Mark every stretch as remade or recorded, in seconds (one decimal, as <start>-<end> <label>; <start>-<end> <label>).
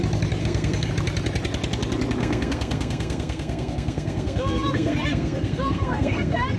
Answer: 0.0-0.4 recorded; 0.4-0.9 remade; 0.9-2.2 recorded; 2.2-6.6 remade